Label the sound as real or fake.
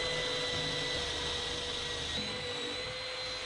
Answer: real